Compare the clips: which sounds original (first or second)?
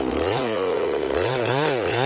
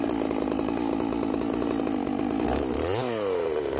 second